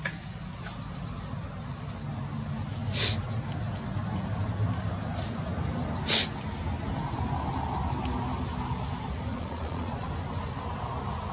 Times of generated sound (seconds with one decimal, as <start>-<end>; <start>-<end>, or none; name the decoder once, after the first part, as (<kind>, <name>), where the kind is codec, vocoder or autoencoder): 9.3-10.1 (vocoder, Vocos)